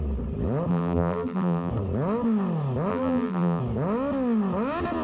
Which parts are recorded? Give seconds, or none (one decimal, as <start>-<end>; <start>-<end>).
0.0-0.7; 1.7-2.9; 3.6-5.0